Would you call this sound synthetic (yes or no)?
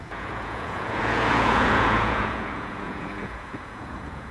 yes